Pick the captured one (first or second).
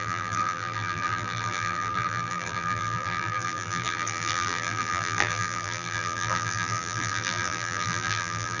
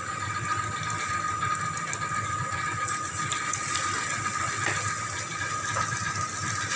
second